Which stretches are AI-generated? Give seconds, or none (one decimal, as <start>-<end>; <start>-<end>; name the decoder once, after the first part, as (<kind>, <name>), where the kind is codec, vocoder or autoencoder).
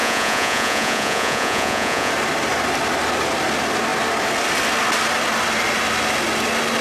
0.0-2.1 (vocoder, Vocos)